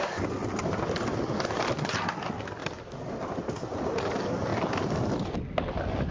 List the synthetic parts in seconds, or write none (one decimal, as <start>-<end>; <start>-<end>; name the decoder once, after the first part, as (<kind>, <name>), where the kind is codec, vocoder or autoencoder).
0.4-1.7 (vocoder, BigVGAN v2); 2.6-3.9; 4.5-5.6